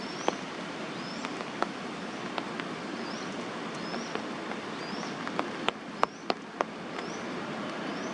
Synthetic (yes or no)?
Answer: no